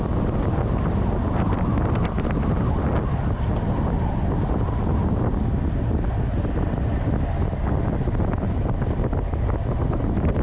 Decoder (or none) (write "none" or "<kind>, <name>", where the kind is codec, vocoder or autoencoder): none